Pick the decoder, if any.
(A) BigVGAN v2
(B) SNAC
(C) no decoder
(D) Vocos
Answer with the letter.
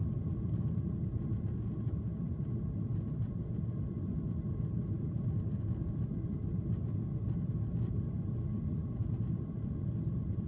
C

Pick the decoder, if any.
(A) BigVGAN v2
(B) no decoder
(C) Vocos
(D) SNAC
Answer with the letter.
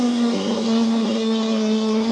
D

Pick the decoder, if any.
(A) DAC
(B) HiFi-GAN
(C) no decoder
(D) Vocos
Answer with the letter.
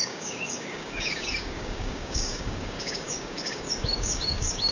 A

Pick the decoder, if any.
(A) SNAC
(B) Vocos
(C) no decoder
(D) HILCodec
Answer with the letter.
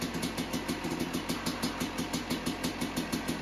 C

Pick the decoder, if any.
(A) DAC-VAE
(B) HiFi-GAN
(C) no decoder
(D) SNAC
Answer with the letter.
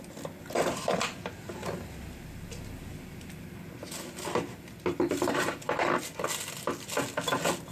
C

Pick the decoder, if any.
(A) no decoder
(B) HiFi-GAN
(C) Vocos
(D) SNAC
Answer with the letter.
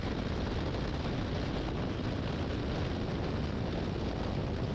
A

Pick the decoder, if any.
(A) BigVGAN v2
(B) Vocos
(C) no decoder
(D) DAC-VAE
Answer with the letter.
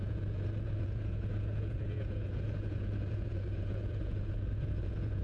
B